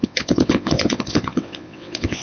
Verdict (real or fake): fake